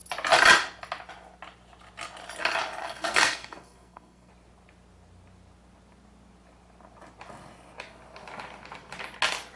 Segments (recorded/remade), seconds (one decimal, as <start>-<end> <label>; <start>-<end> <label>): 0.0-2.8 recorded; 2.8-4.3 remade; 4.3-9.6 recorded